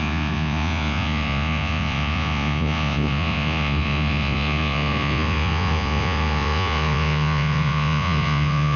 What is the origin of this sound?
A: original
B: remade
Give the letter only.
B